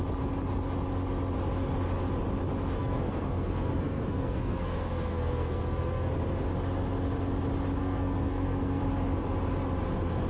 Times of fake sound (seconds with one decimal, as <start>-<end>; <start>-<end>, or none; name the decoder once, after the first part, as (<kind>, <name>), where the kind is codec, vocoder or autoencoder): 2.8-6.1 (codec, SNAC); 7.8-8.8